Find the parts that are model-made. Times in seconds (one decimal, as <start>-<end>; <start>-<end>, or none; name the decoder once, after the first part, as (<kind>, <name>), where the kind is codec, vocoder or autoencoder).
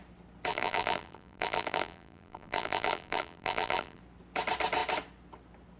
0.5-4.0 (vocoder, BigVGAN v2)